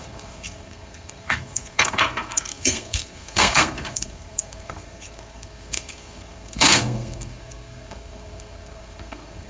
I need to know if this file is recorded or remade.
remade